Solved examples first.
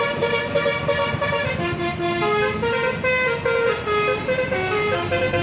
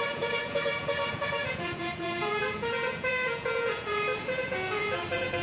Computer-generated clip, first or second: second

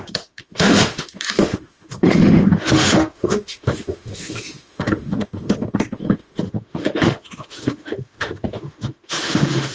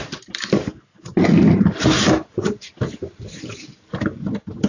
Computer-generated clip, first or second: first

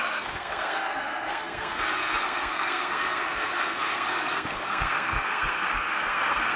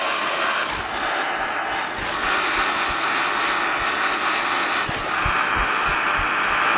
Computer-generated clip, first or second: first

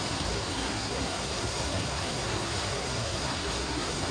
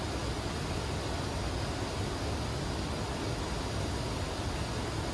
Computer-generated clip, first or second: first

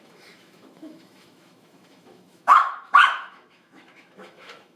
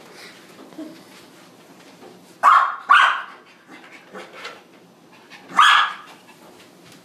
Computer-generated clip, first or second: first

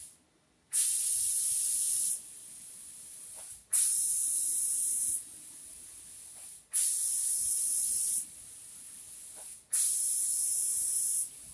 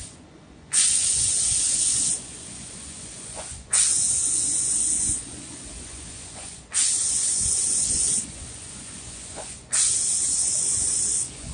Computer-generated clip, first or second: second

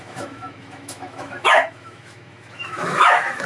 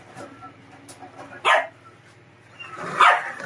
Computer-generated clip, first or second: first